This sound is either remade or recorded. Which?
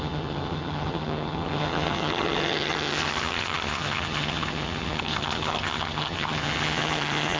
remade